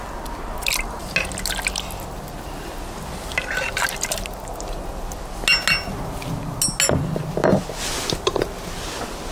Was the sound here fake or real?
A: real